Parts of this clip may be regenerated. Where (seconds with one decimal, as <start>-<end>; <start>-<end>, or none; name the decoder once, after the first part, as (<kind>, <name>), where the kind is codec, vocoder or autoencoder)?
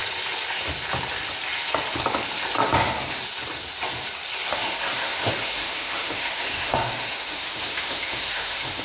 4.5-8.8 (autoencoder, DAC-VAE)